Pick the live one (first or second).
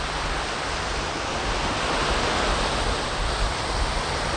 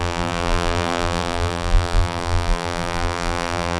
first